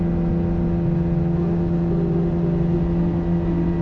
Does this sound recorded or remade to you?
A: recorded